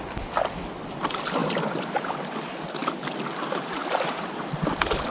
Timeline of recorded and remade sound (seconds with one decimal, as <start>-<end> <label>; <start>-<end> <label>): 0.0-1.4 recorded; 1.4-2.4 remade; 2.4-3.8 recorded; 3.8-4.6 remade; 4.6-5.1 recorded